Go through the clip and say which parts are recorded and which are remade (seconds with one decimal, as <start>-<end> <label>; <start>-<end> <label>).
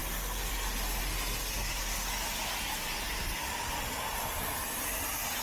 0.0-5.4 recorded